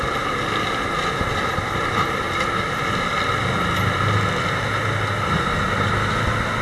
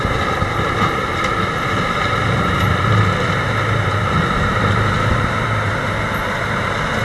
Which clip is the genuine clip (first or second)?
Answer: first